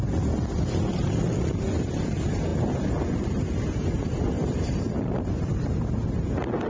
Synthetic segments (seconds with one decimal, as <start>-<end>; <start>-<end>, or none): none